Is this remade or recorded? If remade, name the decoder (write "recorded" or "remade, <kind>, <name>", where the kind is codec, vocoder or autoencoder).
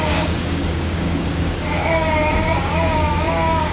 remade, codec, DAC